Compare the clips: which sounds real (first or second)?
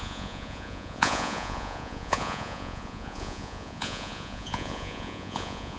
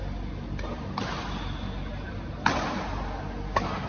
second